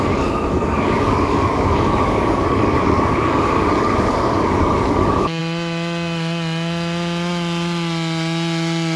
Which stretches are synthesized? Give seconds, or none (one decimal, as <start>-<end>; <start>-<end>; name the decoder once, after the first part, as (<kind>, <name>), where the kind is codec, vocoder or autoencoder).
0.0-5.4 (codec, DAC)